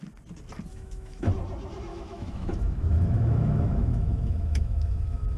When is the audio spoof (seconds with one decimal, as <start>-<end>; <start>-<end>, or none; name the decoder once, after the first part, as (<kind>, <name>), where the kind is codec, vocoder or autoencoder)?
0.7-1.3 (autoencoder, DAC-VAE); 1.9-5.4